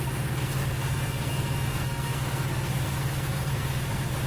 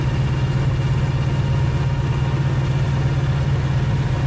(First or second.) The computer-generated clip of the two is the first